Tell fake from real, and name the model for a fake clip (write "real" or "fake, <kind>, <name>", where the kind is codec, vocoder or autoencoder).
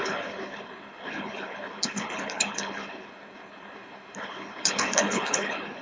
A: fake, codec, HILCodec